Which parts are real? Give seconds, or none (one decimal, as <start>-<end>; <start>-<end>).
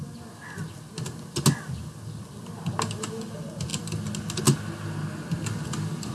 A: 0.0-6.1